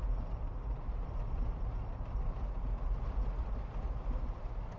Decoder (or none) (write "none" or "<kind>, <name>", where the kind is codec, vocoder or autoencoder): none